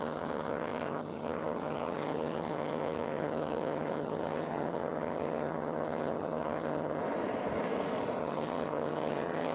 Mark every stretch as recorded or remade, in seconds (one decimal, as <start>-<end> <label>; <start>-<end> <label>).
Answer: 0.0-7.0 remade; 7.0-8.2 recorded; 8.2-9.5 remade